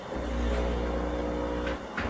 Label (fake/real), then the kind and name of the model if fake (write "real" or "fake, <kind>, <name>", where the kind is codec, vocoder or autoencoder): real